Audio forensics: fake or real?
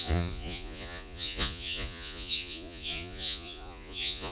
fake